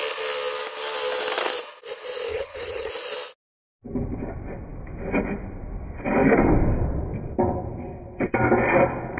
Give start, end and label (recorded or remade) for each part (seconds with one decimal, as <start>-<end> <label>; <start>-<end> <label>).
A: 0.0-2.3 recorded; 2.3-2.9 remade; 2.9-9.2 recorded